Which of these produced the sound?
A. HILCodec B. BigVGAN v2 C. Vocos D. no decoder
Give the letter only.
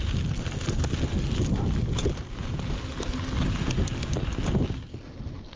D